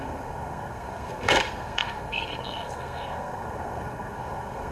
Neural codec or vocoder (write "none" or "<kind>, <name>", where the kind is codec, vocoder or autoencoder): codec, SNAC